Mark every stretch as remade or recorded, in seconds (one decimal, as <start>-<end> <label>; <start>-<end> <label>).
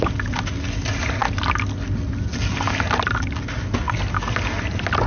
0.0-5.1 recorded